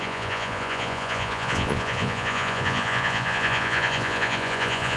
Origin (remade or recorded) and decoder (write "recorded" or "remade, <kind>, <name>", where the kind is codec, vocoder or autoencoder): remade, vocoder, Vocos